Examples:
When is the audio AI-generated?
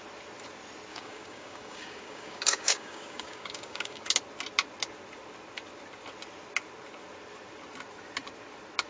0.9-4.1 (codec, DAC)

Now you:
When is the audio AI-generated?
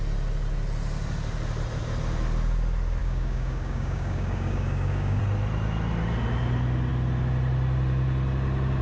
3.0-5.2 (codec, DAC)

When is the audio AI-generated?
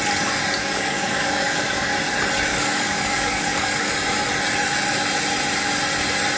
0.6-1.9 (codec, DAC); 2.5-3.9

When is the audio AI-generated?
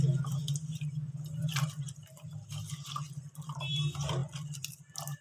none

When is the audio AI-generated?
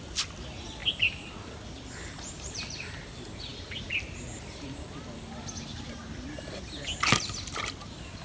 none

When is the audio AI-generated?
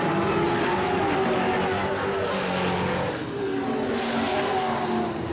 none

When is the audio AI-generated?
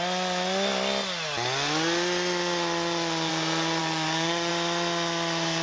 3.8-4.5 (codec, DAC)